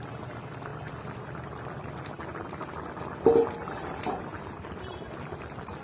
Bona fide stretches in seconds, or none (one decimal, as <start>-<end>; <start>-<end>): 0.0-5.8